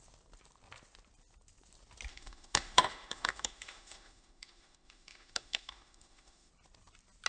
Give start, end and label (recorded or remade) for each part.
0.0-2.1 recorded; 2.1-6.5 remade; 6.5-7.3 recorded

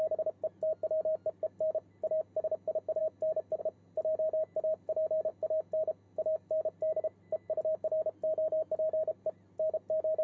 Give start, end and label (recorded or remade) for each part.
0.0-10.2 recorded

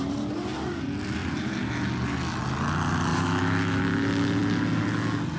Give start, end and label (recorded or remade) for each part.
0.0-3.1 recorded; 3.1-3.8 remade; 3.8-5.4 recorded